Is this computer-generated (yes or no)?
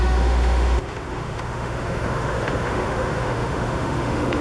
yes